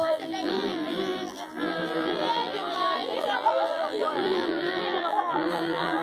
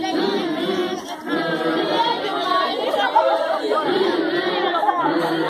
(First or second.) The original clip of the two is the second